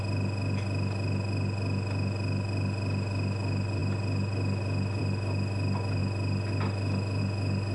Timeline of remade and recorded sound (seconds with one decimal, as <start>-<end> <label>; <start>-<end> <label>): 0.0-7.7 recorded